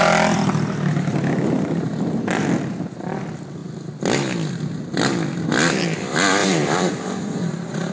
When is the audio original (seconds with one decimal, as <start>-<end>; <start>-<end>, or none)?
0.0-6.4